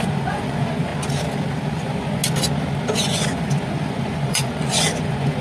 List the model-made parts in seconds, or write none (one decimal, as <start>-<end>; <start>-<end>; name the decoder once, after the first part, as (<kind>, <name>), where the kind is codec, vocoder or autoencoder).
0.0-0.9 (vocoder, Vocos); 1.7-2.2; 3.0-5.4